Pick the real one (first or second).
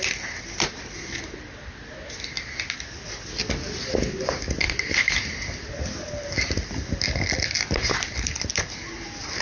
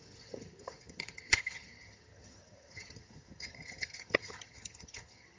first